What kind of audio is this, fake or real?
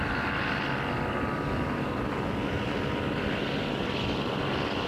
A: real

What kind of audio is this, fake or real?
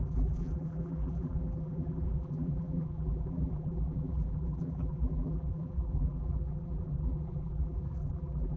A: fake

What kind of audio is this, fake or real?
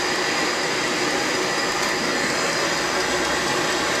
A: real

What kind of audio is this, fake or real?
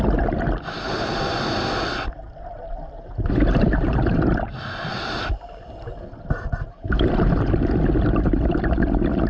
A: fake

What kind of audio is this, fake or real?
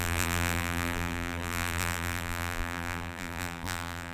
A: fake